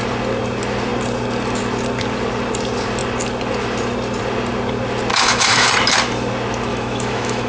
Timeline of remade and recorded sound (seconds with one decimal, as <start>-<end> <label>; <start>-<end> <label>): 0.0-5.1 recorded; 5.1-5.7 remade; 5.7-6.7 recorded; 6.7-7.5 remade